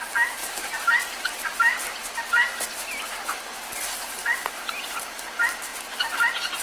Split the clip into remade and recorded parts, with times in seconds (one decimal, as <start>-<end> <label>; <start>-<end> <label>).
0.0-6.6 recorded